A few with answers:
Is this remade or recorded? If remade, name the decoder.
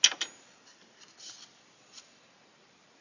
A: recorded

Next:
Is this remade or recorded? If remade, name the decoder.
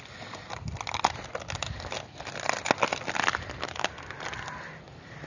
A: recorded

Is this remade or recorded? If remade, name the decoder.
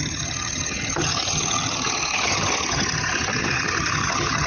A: remade, vocoder, HiFi-GAN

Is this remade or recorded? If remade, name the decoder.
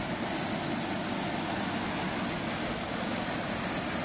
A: recorded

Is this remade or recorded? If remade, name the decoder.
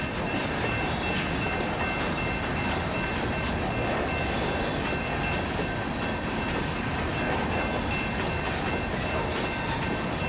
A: recorded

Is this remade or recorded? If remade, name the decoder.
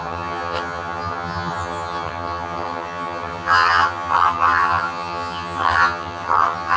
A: remade, vocoder, HiFi-GAN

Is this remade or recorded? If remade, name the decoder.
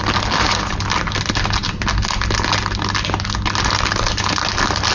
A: recorded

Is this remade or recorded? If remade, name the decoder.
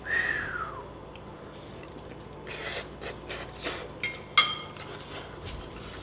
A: recorded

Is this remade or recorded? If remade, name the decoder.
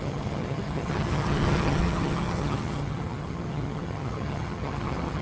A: remade, vocoder, HiFi-GAN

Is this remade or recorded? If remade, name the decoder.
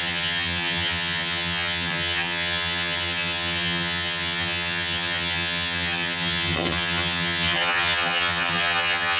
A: remade, vocoder, HiFi-GAN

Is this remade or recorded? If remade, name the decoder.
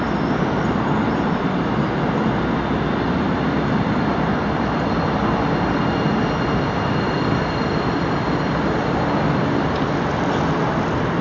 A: recorded